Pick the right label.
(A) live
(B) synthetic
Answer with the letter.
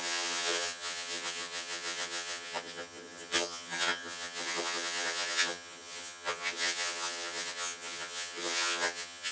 B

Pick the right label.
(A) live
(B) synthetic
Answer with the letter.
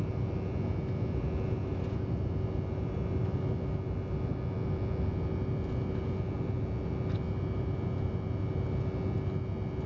A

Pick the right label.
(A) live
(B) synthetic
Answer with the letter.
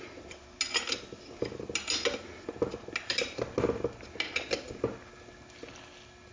A